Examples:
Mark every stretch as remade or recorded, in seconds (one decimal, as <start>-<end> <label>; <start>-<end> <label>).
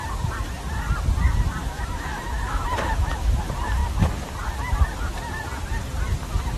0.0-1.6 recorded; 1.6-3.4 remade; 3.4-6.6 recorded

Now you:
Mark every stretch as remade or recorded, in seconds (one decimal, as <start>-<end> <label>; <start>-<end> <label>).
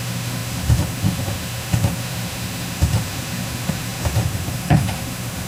0.0-5.5 remade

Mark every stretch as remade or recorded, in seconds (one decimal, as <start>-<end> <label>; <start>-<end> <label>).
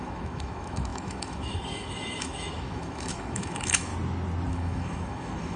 0.0-3.9 remade; 3.9-4.5 recorded; 4.5-5.6 remade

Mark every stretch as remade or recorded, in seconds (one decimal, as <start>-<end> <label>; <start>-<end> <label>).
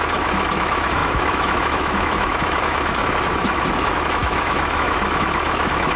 0.0-6.0 remade